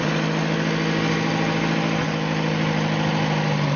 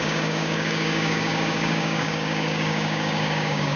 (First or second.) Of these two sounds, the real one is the first